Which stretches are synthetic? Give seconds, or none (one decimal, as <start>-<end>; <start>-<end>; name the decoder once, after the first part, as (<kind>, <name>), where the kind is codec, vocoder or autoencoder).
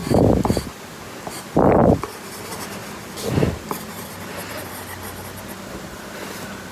none